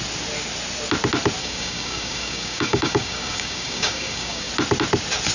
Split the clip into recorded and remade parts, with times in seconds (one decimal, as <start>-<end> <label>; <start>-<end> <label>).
0.0-1.4 recorded; 1.4-4.5 remade; 4.5-5.3 recorded